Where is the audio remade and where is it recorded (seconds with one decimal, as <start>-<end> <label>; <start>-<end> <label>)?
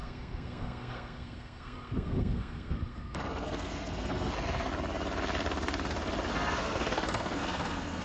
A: 0.0-4.7 remade; 4.7-6.3 recorded; 6.3-8.0 remade